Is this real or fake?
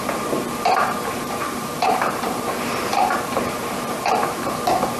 fake